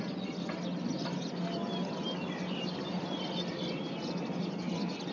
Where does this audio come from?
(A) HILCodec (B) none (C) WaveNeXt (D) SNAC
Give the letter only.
B